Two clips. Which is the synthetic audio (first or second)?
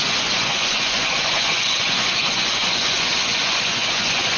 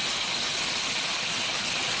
first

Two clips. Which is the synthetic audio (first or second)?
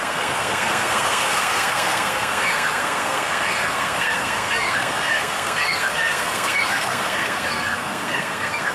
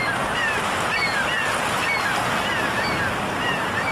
first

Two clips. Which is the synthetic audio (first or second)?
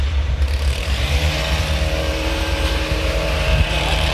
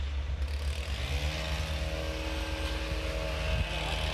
first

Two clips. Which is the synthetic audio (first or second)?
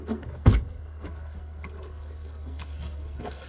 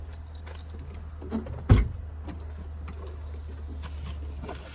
first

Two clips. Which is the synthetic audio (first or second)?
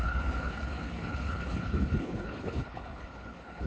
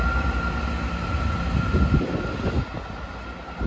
first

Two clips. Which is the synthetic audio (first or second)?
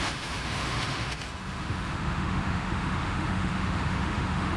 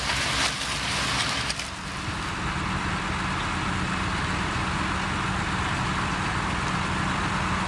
first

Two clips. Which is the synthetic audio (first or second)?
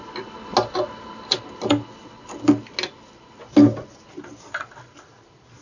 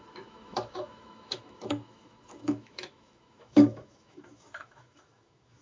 second